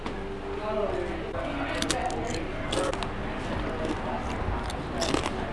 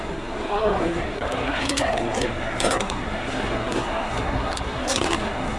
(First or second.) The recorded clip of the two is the first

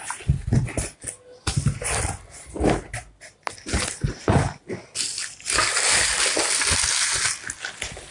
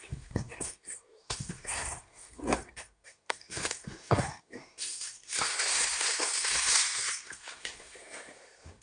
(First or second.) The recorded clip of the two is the first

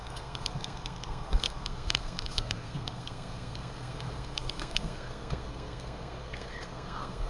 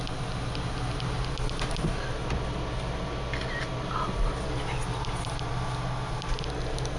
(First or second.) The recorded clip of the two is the second